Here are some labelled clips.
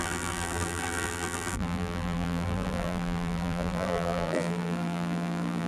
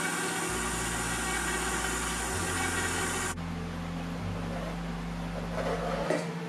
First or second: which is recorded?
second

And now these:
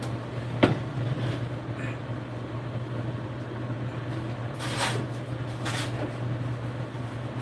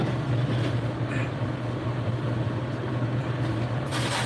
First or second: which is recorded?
first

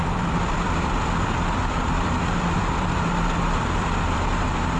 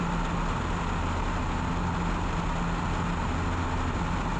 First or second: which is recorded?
second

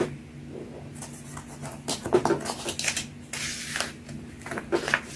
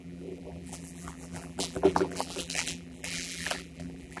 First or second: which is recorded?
first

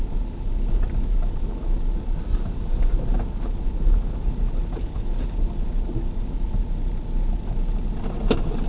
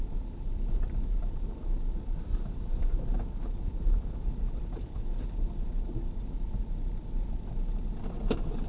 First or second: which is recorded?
first